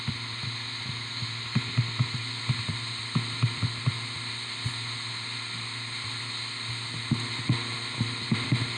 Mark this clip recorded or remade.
recorded